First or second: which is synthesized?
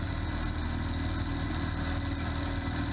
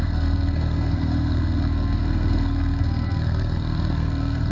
second